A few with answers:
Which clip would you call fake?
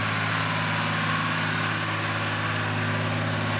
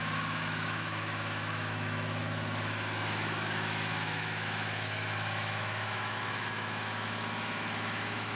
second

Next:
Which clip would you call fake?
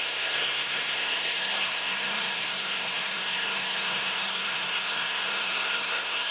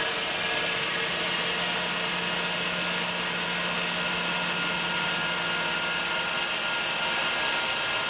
first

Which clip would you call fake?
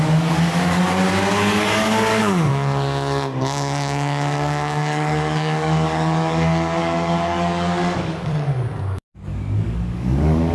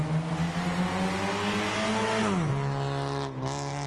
first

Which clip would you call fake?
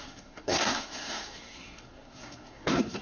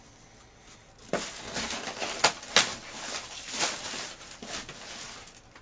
first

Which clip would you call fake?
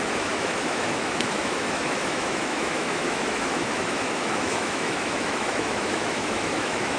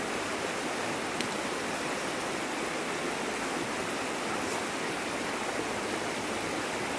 first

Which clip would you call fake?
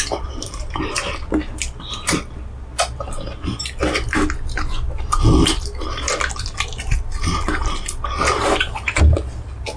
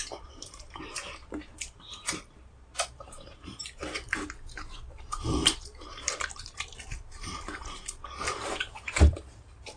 second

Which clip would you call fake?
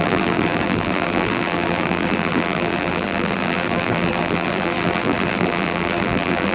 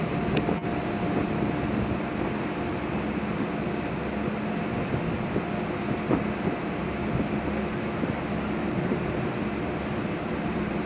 first